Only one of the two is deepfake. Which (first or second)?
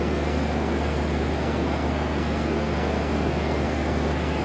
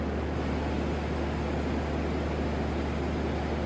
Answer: first